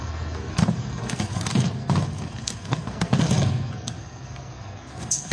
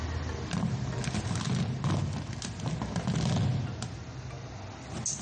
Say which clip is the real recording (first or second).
second